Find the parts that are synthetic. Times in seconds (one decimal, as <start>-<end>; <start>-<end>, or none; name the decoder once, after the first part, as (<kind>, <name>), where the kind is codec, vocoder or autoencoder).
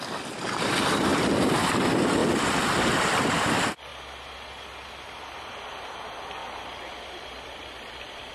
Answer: 1.1-1.7 (vocoder, BigVGAN v2)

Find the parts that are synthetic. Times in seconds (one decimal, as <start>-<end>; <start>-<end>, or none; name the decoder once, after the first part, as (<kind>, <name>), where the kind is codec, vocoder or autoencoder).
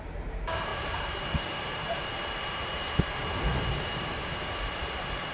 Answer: 0.0-3.2 (vocoder, BigVGAN v2); 3.7-5.3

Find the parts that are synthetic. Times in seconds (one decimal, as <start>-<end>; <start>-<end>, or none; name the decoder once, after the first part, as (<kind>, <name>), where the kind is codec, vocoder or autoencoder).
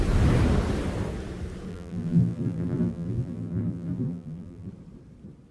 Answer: 1.7-4.7 (vocoder, BigVGAN v2)